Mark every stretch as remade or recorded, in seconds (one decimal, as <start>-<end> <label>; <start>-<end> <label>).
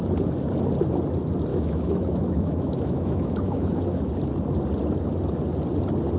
0.0-1.5 recorded; 1.5-4.1 remade; 4.1-6.2 recorded